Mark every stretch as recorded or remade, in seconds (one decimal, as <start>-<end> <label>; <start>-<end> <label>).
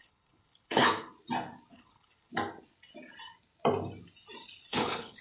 0.0-0.8 remade; 0.8-1.7 recorded; 1.7-2.3 remade; 2.3-4.7 recorded; 4.7-5.2 remade